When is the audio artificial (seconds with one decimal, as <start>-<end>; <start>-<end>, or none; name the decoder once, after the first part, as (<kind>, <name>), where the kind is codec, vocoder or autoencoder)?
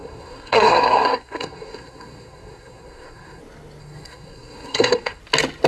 0.0-3.4 (codec, SNAC); 3.8-5.2